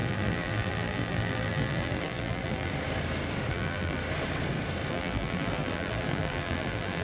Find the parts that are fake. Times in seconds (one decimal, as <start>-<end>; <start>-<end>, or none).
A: 0.0-2.7; 3.5-4.0; 4.9-7.0